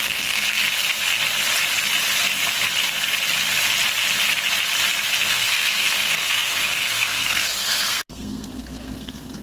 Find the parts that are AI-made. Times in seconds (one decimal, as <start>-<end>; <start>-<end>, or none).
0.0-0.6; 5.2-9.4